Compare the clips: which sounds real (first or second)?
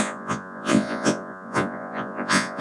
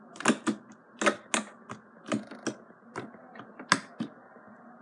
second